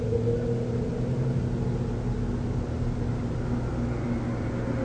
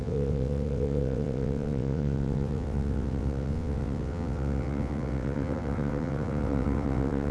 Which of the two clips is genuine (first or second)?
first